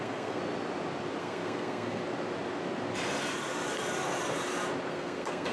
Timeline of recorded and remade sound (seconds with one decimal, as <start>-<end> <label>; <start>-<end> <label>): 0.0-0.4 remade; 0.4-1.2 recorded; 1.2-2.0 remade; 2.0-4.9 recorded; 4.9-5.5 remade

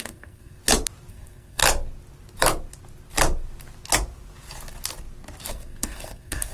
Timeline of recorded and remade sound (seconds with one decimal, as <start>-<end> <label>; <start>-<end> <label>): 0.0-0.6 remade; 0.6-1.1 recorded; 1.1-1.6 remade; 1.6-5.5 recorded; 5.5-6.5 remade

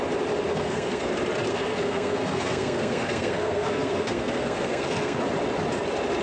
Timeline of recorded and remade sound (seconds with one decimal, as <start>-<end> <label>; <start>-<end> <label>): 0.0-0.5 recorded; 0.5-1.1 remade; 1.1-1.5 recorded; 1.5-5.2 remade; 5.2-6.2 recorded